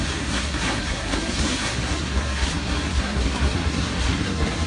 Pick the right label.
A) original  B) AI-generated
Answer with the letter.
B